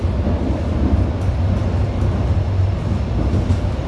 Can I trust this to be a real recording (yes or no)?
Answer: yes